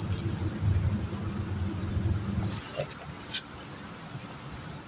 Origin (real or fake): real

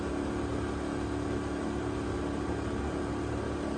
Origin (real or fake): real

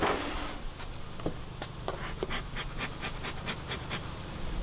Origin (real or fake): real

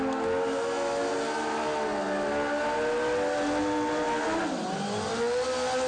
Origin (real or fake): real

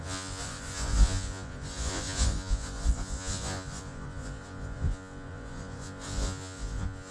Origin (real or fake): fake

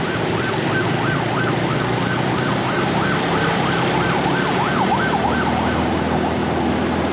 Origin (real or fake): real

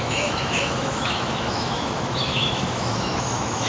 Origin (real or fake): fake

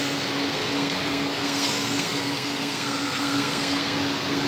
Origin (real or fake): fake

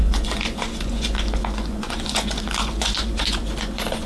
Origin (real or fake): fake